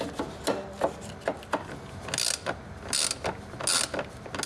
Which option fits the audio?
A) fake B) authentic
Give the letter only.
B